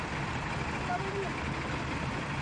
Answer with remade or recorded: recorded